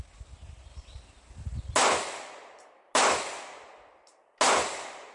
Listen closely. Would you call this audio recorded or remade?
recorded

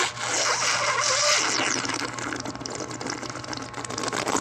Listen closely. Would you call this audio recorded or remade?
recorded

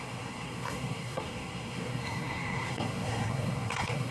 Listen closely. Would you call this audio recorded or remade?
remade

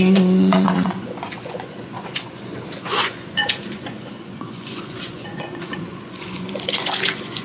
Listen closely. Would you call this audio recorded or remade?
remade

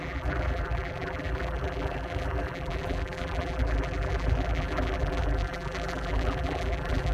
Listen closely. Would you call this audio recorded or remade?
remade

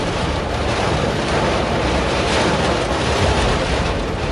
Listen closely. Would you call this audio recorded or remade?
remade